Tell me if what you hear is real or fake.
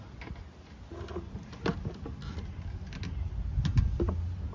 real